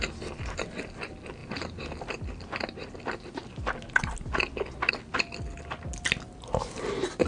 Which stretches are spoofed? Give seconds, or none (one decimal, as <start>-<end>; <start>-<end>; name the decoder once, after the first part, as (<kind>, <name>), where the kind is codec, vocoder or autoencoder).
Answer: none